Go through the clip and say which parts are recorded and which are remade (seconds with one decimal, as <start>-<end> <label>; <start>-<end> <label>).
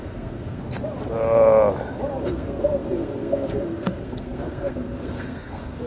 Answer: 0.0-0.6 remade; 0.6-2.2 recorded; 2.2-5.9 remade